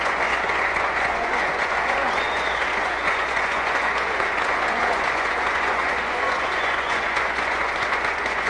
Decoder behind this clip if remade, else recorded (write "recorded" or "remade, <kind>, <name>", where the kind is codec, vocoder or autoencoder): remade, vocoder, Vocos